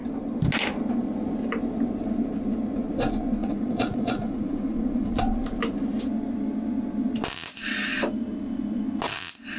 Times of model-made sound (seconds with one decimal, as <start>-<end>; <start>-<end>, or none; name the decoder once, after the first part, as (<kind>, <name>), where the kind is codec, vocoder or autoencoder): 3.4-5.2 (vocoder, Vocos)